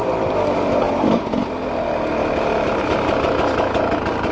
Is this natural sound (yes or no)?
yes